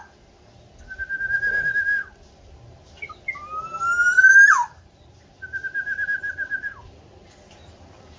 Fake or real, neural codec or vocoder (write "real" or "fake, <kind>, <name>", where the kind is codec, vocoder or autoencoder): real